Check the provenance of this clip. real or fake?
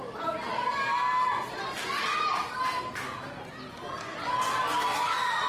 real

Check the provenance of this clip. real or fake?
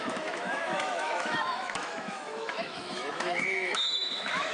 fake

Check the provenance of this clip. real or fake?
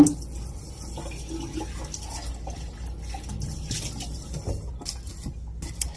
real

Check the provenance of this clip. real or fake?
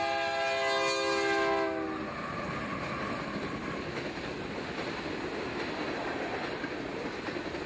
real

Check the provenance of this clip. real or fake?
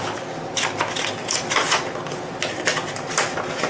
real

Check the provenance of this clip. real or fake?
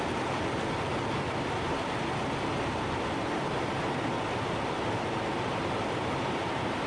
real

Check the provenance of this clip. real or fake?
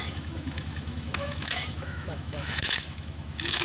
fake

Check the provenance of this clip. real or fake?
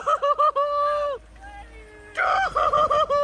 real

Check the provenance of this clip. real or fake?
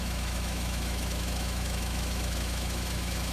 fake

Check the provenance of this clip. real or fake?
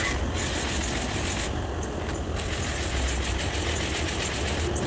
real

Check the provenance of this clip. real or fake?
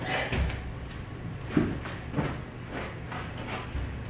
real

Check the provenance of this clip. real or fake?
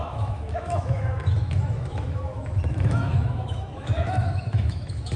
fake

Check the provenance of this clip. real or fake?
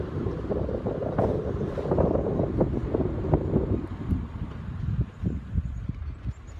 real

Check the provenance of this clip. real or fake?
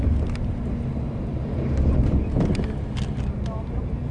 real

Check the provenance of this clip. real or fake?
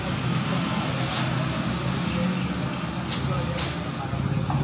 real